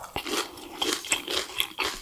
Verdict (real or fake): real